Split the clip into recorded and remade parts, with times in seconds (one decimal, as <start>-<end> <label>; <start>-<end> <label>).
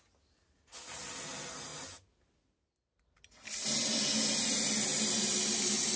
0.0-6.0 recorded